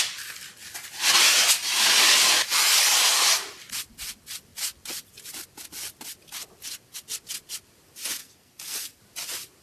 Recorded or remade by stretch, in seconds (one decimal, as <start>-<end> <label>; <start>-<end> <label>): 0.0-8.2 recorded; 8.2-9.0 remade; 9.0-9.6 recorded

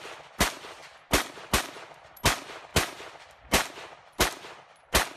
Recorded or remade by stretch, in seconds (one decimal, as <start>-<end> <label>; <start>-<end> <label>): 0.0-5.2 recorded